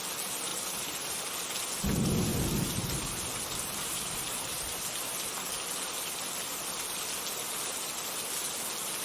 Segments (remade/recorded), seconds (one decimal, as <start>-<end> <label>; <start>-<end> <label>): 0.0-0.5 recorded; 0.5-1.2 remade; 1.2-2.3 recorded; 2.3-4.9 remade; 4.9-9.0 recorded

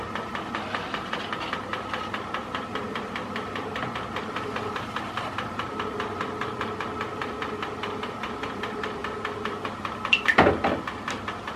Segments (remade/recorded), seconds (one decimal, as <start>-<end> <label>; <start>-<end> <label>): 0.0-9.0 remade; 9.0-11.6 recorded

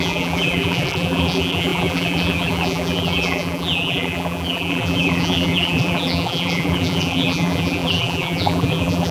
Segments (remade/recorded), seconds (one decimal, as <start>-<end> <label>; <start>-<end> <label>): 0.0-9.1 remade